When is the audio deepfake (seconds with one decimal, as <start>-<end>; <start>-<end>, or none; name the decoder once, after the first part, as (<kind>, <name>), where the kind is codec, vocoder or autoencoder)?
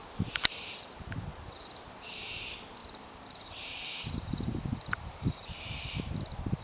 0.0-1.7 (vocoder, BigVGAN v2); 2.8-6.1